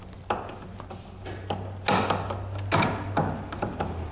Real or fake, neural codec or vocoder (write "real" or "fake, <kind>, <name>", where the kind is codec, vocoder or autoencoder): real